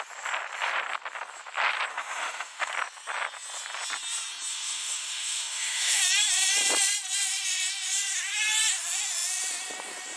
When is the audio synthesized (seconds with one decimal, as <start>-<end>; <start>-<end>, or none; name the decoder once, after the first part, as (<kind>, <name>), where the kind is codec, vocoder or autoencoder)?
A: 1.9-2.7 (autoencoder, DAC-VAE); 4.5-6.0